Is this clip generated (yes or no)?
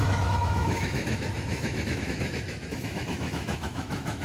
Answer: yes